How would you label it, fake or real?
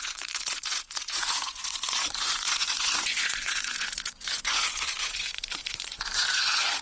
fake